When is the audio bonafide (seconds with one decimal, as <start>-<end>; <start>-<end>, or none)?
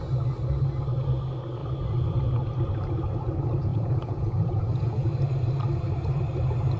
0.0-3.7; 5.1-6.8